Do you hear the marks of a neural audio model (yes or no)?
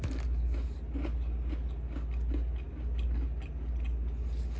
no